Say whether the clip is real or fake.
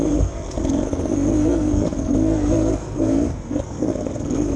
fake